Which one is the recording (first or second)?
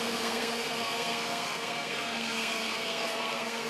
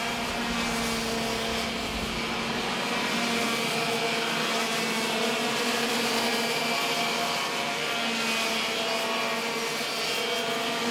second